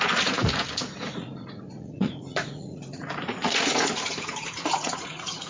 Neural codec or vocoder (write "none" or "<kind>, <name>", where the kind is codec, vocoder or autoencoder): vocoder, Vocos